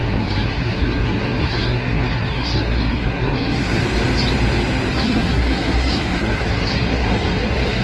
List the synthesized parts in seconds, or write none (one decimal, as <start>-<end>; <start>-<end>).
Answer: 0.0-3.8; 4.9-7.8